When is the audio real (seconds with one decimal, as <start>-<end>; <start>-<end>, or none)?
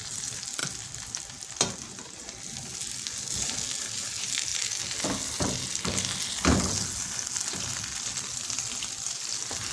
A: 0.0-9.7